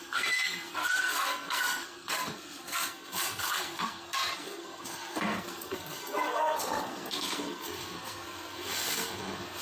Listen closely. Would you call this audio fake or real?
fake